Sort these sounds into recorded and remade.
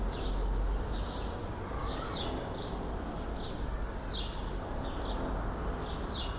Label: recorded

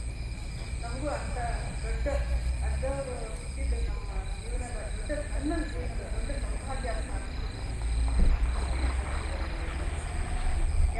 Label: recorded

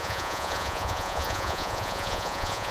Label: remade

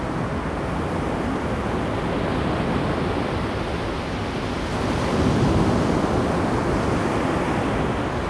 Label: recorded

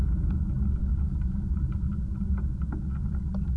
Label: recorded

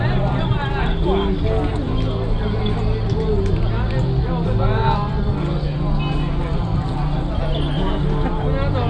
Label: recorded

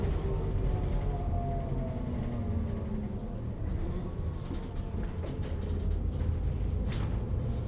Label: recorded